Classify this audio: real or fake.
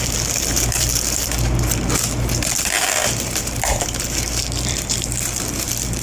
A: fake